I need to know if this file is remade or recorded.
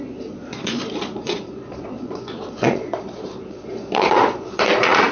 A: remade